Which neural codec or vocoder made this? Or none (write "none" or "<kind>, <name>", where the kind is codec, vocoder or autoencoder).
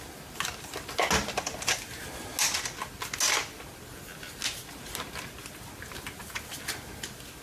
none